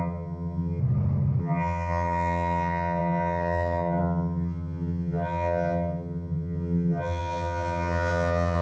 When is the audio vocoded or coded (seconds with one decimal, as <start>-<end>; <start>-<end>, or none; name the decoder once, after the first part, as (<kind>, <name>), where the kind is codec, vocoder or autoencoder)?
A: 0.0-0.8 (vocoder, HiFi-GAN); 1.4-8.6